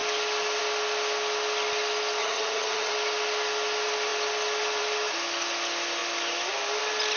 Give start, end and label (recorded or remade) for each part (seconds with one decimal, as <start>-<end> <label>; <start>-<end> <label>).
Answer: 0.0-2.2 recorded; 2.2-2.9 remade; 2.9-7.2 recorded